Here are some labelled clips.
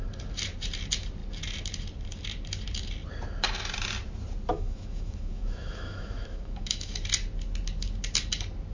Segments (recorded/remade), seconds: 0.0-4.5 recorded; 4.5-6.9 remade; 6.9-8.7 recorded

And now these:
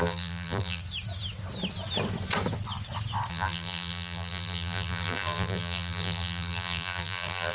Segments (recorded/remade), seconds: 0.0-0.8 remade; 0.8-3.3 recorded; 3.3-7.5 remade

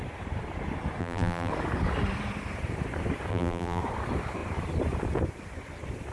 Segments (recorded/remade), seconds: 0.0-1.0 recorded; 1.0-1.5 remade; 1.5-3.3 recorded; 3.3-3.8 remade; 3.8-6.1 recorded

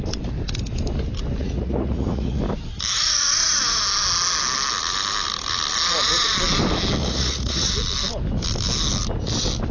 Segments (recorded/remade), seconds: 0.0-1.4 recorded; 1.4-2.4 remade; 2.4-7.0 recorded; 7.0-7.7 remade; 7.7-9.7 recorded

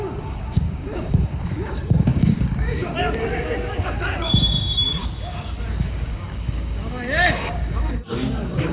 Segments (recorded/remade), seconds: 0.0-8.7 remade

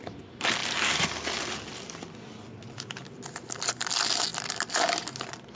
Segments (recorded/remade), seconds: 0.0-5.5 recorded